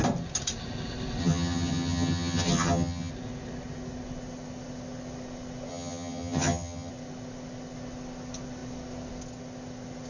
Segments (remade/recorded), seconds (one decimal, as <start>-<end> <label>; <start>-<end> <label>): 0.0-1.2 recorded; 1.2-3.1 remade; 3.1-5.7 recorded; 5.7-6.9 remade; 6.9-10.1 recorded